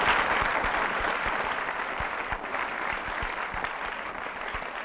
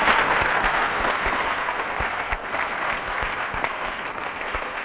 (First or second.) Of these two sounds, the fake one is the second